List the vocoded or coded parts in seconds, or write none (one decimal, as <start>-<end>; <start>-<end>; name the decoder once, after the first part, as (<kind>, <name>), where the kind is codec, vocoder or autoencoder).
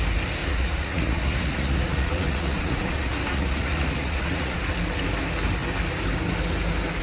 0.4-4.6 (vocoder, Vocos)